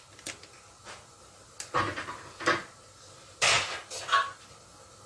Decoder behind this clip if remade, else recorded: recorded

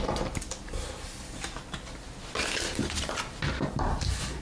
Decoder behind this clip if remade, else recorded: recorded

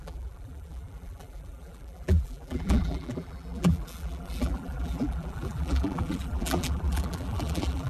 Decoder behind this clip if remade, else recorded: remade, vocoder, BigVGAN v2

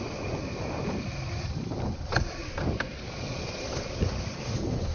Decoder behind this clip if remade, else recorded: recorded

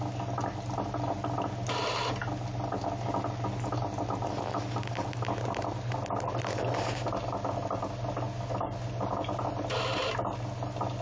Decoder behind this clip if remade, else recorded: recorded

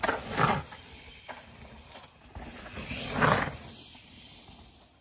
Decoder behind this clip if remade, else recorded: recorded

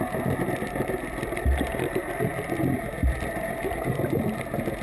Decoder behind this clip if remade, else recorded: recorded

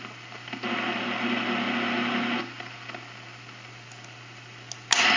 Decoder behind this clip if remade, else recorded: recorded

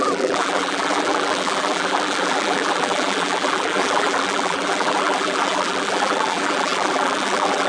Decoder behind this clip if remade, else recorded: remade, vocoder, BigVGAN v2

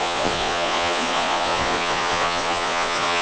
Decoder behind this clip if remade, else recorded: remade, vocoder, Vocos